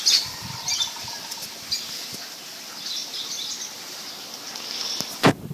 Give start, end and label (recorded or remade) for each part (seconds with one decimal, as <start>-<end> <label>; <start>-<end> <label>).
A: 0.0-5.5 recorded